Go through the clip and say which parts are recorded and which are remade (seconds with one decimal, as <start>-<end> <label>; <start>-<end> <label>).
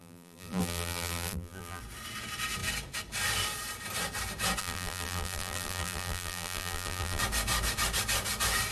0.0-1.8 remade; 1.8-4.6 recorded; 4.6-7.2 remade; 7.2-8.7 recorded